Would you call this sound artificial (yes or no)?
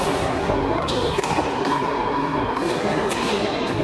yes